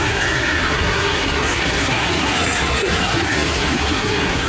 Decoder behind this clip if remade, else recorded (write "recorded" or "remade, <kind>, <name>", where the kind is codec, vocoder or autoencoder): remade, codec, SNAC